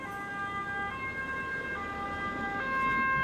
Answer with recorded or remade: recorded